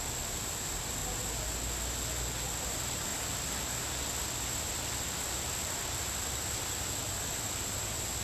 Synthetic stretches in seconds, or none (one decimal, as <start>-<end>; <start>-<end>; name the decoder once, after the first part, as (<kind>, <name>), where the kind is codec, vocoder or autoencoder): 0.0-1.0 (vocoder, BigVGAN v2); 2.6-3.1; 3.6-8.2